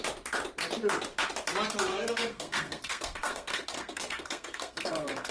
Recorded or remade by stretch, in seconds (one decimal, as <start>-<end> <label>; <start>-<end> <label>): 0.0-1.9 recorded; 1.9-5.3 remade